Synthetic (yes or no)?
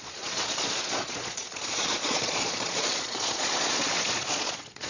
yes